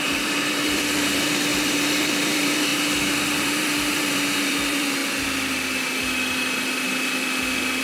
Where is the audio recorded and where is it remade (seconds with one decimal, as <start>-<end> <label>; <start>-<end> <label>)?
0.0-5.0 remade; 5.0-7.8 recorded